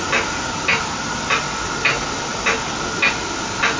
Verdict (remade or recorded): recorded